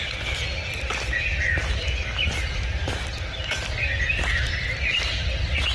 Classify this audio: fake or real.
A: real